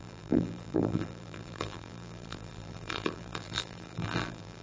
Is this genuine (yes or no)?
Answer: no